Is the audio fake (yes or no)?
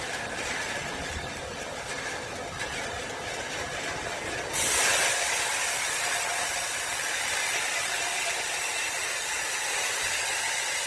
no